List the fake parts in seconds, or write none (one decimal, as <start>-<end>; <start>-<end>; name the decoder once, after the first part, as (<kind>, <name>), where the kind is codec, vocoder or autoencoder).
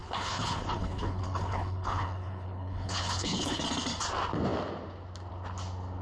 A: 0.0-3.6 (codec, HILCodec)